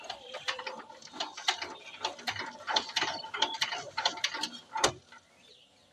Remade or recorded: recorded